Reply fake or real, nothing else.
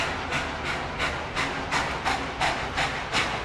real